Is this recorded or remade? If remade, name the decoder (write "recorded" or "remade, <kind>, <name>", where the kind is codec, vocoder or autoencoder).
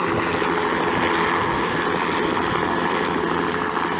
recorded